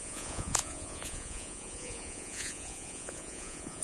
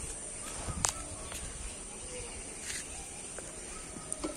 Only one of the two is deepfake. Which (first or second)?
first